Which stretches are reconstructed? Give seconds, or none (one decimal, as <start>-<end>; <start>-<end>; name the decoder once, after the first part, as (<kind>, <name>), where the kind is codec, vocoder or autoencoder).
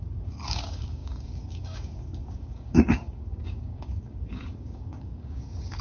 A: 0.0-5.8 (codec, DAC)